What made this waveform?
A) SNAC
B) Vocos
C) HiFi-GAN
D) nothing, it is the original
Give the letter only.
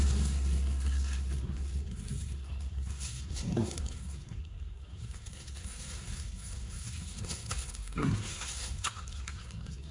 A